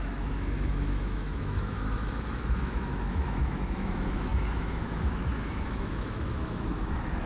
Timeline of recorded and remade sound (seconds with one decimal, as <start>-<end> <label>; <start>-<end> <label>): 0.0-7.3 remade